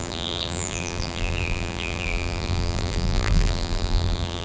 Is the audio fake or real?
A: fake